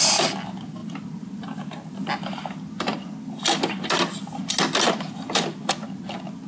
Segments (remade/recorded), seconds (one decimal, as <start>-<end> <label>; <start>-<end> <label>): 0.0-6.5 recorded